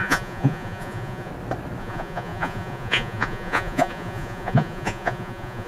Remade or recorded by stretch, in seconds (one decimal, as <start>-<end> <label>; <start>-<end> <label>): 0.0-1.3 remade; 1.3-1.8 recorded; 1.8-5.7 remade